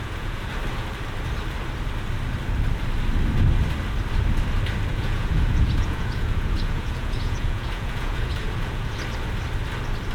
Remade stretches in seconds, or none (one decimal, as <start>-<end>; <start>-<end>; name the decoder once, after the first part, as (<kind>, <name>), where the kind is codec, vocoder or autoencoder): 0.0-0.5 (vocoder, Vocos); 4.9-9.0